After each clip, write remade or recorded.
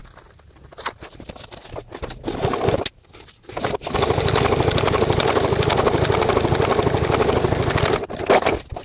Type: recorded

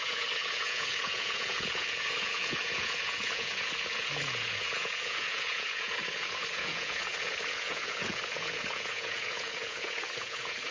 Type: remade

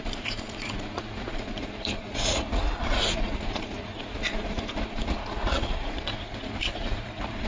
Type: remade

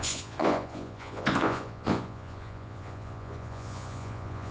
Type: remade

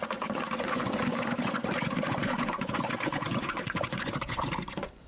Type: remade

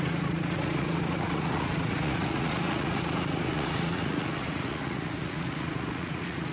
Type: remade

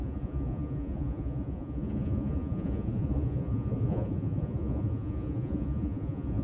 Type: remade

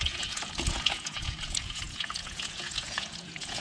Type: remade